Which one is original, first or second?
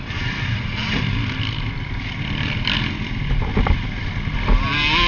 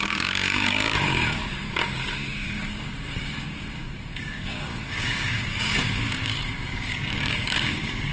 first